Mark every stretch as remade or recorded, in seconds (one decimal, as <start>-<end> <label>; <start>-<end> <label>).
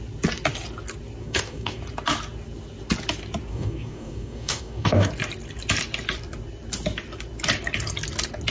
0.0-1.2 recorded; 1.2-1.8 remade; 1.8-3.5 recorded; 3.5-5.1 remade; 5.1-8.5 recorded